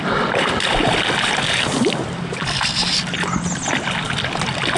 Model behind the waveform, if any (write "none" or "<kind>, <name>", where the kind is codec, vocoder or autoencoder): none